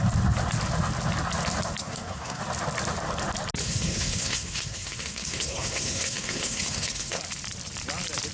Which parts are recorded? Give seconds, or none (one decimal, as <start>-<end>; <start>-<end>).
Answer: 0.0-1.8; 2.4-3.6; 7.2-8.3